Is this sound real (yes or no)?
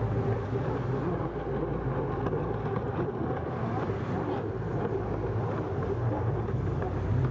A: yes